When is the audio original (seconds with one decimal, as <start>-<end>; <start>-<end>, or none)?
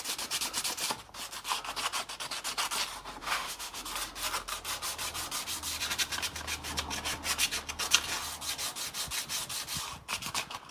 0.0-3.2; 3.8-10.7